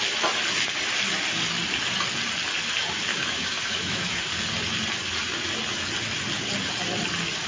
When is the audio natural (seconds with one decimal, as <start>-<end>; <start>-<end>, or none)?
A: 0.0-3.1; 4.3-7.5